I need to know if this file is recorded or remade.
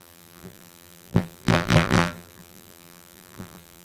remade